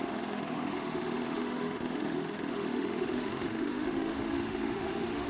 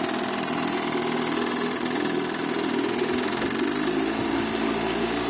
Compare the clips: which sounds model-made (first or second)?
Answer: first